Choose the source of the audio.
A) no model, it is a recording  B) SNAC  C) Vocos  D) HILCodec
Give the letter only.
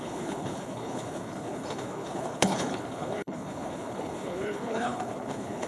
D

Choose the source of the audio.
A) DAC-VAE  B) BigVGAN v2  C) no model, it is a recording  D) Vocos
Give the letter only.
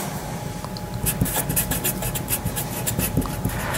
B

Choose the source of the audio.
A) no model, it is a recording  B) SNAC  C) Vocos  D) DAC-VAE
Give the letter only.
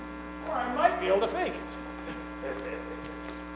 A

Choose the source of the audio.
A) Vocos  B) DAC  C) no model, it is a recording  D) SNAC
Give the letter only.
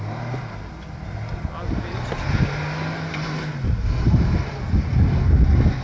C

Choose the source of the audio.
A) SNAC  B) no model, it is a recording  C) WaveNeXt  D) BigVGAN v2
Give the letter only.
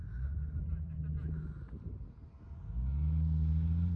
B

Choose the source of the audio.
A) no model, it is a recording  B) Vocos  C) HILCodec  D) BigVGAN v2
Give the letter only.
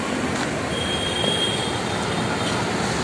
A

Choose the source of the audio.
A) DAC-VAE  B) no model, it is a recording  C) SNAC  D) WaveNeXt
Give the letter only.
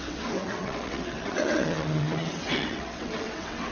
D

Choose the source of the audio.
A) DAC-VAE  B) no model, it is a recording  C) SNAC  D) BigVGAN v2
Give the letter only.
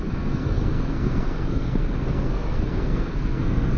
C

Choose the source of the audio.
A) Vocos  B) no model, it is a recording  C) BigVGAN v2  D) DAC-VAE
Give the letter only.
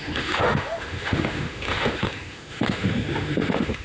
D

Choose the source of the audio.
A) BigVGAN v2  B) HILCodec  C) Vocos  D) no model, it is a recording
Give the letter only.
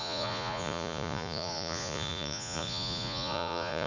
C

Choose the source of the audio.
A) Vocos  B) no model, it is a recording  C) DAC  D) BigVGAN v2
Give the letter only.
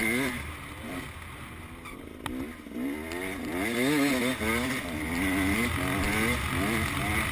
B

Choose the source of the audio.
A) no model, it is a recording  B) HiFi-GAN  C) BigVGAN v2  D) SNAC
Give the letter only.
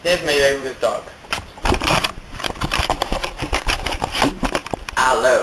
C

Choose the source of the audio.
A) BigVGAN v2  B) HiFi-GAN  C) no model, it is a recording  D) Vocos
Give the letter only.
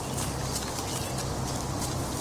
C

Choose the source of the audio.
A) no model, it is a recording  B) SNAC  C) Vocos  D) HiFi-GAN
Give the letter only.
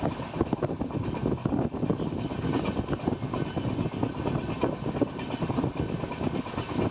A